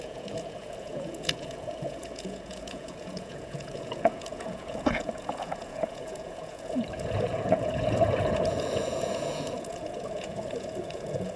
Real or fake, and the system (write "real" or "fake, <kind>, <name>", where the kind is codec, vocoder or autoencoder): fake, vocoder, Vocos